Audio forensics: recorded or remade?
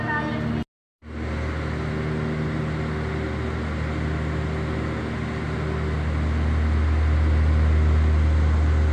recorded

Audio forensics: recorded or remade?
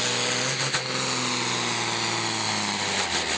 recorded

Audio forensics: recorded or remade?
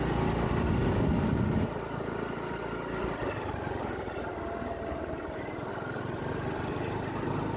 remade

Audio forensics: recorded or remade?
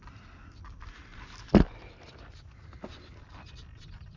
recorded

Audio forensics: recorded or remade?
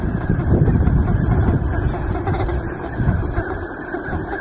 remade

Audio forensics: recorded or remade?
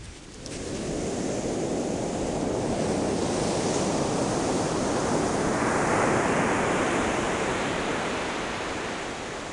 recorded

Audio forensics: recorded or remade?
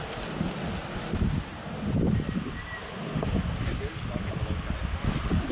recorded